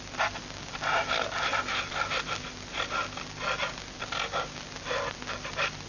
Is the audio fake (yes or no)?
no